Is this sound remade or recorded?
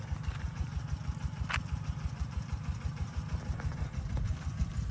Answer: recorded